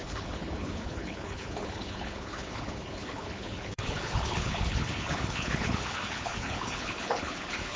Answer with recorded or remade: remade